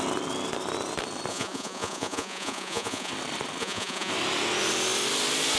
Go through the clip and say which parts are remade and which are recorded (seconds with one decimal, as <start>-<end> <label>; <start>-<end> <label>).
0.0-1.3 recorded; 1.3-3.1 remade; 3.1-3.6 recorded; 3.6-4.1 remade; 4.1-5.6 recorded